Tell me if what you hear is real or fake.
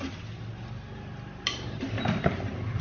fake